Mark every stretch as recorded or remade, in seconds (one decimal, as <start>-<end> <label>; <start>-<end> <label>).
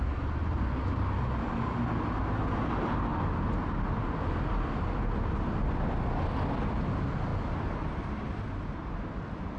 0.0-7.3 recorded; 7.3-8.9 remade; 8.9-9.6 recorded